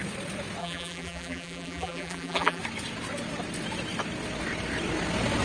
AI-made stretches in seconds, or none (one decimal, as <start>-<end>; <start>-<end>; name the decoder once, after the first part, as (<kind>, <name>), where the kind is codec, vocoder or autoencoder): 0.6-2.6 (vocoder, BigVGAN v2)